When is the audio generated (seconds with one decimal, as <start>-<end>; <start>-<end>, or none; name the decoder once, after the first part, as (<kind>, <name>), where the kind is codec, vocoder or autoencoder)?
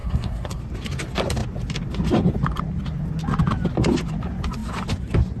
0.0-0.6 (codec, SNAC)